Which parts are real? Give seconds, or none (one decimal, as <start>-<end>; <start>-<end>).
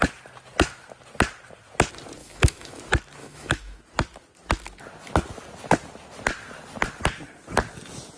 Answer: 0.0-2.2; 2.8-3.2; 3.8-8.2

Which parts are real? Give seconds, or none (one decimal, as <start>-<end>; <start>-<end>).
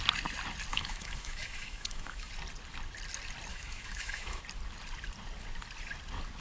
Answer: 0.0-0.7; 2.3-3.5; 4.4-6.4